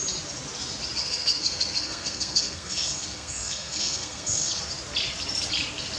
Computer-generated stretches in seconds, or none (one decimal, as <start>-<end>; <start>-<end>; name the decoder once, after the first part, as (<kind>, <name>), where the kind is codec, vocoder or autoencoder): 1.0-4.6 (codec, SNAC)